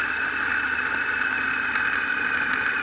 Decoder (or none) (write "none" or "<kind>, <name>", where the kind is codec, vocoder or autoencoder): none